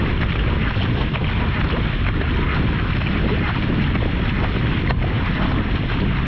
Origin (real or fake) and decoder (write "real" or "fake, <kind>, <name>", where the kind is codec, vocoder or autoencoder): real